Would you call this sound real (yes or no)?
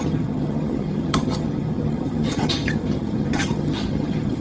no